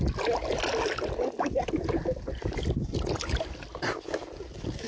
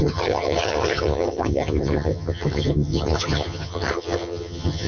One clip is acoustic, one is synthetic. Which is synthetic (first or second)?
second